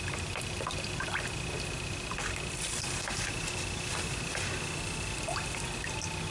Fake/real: real